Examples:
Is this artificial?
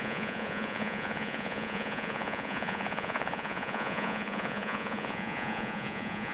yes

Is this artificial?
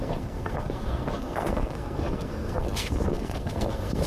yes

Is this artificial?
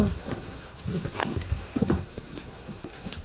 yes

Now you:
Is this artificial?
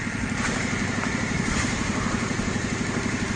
yes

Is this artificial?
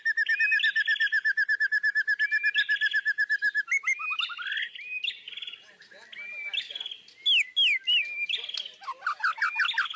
no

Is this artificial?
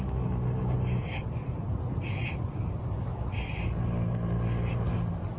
no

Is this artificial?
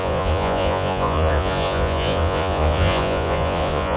yes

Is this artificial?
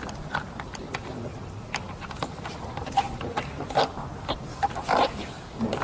no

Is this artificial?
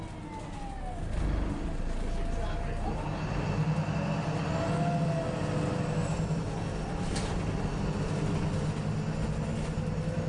no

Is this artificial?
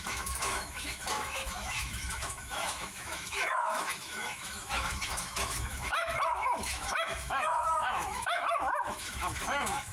yes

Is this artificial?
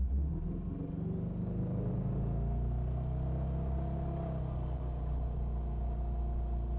no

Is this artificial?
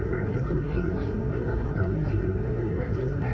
yes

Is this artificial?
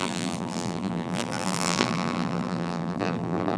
yes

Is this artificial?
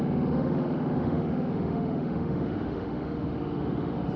yes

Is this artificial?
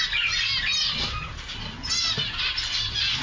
no